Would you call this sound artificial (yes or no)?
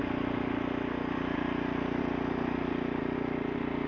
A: no